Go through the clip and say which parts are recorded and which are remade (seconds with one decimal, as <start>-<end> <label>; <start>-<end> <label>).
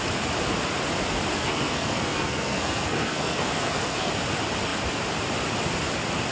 0.0-1.3 recorded; 1.3-4.1 remade; 4.1-6.3 recorded